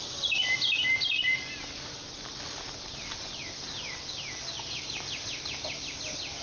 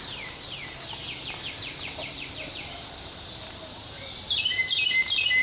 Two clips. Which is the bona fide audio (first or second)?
first